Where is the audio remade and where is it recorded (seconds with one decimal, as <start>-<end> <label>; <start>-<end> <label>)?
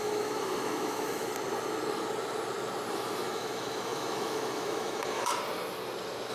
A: 0.0-1.3 remade; 1.3-2.9 recorded; 2.9-5.3 remade; 5.3-6.3 recorded